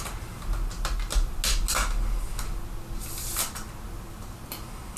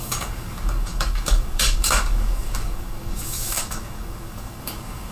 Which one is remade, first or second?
second